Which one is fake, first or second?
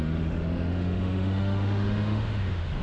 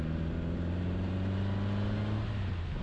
first